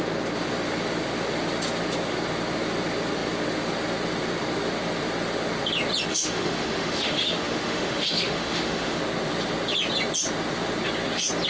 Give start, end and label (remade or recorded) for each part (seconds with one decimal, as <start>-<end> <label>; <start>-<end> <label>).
0.0-6.1 recorded; 6.1-9.0 remade; 9.0-11.5 recorded